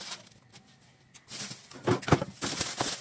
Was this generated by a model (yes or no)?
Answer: no